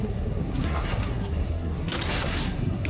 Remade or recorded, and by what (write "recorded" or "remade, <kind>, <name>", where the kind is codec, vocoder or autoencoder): remade, codec, SNAC